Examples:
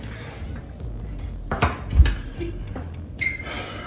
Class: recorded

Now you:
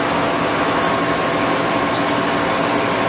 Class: recorded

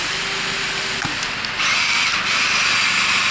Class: recorded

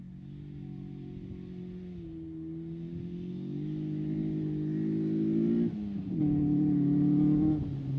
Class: recorded